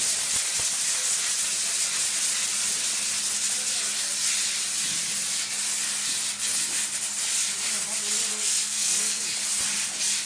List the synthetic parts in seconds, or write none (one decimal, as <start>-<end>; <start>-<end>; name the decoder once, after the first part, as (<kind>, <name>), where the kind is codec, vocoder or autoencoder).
8.3-9.2 (codec, SNAC)

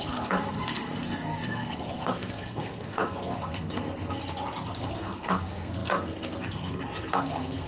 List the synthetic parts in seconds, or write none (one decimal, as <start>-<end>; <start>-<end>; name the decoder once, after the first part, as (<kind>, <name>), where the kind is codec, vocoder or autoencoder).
0.0-4.2 (codec, SNAC); 4.8-7.7

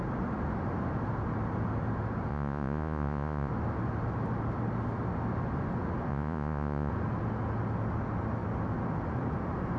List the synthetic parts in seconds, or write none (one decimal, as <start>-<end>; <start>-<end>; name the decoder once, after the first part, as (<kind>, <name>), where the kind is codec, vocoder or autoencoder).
2.3-3.5 (vocoder, Vocos); 6.1-6.9

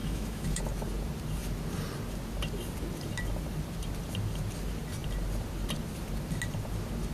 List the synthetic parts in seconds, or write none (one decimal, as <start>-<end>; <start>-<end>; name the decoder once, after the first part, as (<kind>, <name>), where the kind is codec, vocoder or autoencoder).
0.0-0.6 (autoencoder, DAC-VAE)

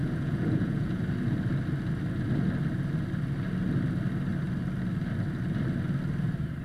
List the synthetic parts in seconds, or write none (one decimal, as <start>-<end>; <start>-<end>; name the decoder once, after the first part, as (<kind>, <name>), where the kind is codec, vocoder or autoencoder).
0.0-1.0 (vocoder, Vocos)

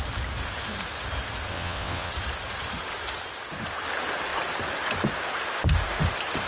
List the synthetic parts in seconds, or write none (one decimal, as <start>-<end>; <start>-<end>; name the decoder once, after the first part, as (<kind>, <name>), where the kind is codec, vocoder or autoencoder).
1.5-2.1 (vocoder, WaveNeXt)

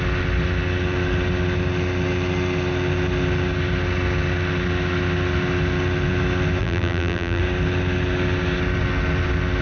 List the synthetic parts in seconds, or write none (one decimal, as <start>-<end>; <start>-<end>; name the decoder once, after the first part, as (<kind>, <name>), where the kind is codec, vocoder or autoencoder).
6.6-7.4 (vocoder, BigVGAN v2)